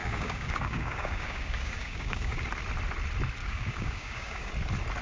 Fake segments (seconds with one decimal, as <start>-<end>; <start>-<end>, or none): 0.0-2.4; 3.4-4.5